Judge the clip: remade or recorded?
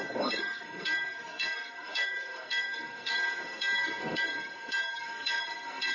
remade